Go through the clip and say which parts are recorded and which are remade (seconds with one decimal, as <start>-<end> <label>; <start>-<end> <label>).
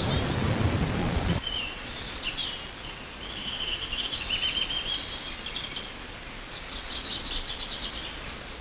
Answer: 0.0-1.0 recorded; 1.0-2.6 remade; 2.6-3.4 recorded; 3.4-4.2 remade; 4.2-8.6 recorded